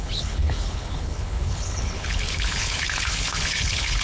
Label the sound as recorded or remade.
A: remade